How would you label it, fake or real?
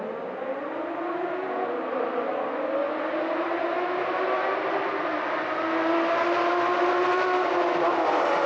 real